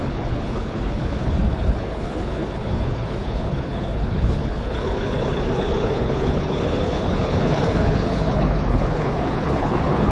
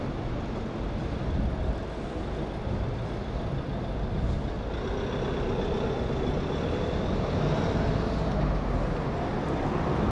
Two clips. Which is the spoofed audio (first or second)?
first